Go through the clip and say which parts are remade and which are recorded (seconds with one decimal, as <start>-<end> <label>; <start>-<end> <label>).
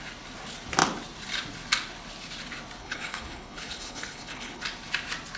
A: 0.0-2.8 recorded; 2.8-4.6 remade; 4.6-5.4 recorded